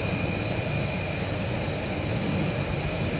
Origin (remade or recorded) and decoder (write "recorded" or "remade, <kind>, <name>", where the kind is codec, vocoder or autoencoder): recorded